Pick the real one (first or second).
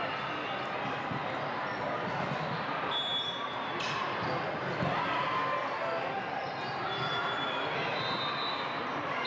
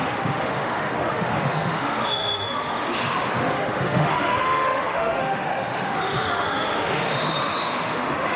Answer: first